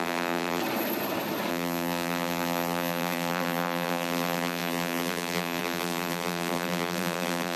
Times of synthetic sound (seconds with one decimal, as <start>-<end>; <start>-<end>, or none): 0.0-0.6; 1.5-7.6